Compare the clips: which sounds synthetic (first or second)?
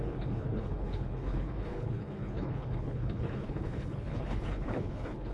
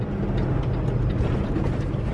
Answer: first